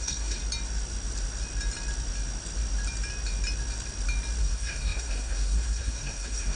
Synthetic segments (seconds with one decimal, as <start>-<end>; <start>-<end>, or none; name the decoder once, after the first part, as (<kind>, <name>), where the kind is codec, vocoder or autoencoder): 0.0-0.4 (codec, SNAC); 4.4-6.6